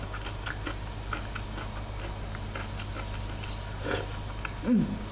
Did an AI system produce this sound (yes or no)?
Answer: no